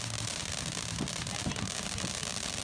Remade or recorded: recorded